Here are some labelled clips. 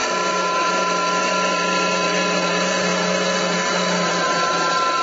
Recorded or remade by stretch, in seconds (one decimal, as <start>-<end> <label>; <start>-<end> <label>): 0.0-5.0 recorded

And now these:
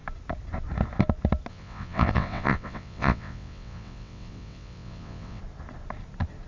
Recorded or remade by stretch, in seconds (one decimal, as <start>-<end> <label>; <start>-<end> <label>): 0.0-1.5 recorded; 1.5-5.4 remade; 5.4-6.5 recorded

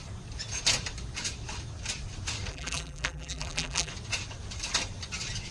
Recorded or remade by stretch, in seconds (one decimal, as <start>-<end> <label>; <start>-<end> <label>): 0.0-2.5 recorded; 2.5-3.9 remade; 3.9-5.5 recorded

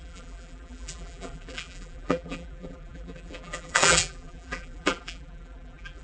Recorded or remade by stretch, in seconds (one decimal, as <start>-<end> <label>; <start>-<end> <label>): 0.0-6.0 remade

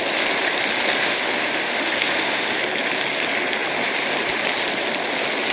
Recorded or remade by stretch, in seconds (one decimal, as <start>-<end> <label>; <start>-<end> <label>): 0.0-1.0 recorded; 1.0-2.6 remade; 2.6-5.5 recorded

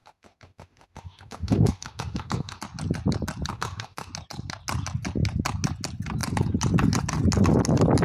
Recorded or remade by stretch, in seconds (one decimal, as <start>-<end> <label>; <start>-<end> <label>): 0.0-2.6 remade; 2.6-3.5 recorded; 3.5-4.1 remade; 4.1-8.0 recorded